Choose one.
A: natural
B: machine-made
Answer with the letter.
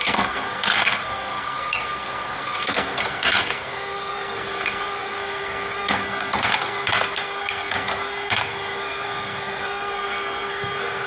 B